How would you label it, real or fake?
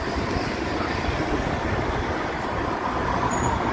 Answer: real